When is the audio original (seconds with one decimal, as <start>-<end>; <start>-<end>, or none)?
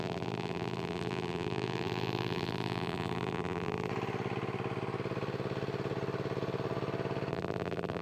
3.9-7.3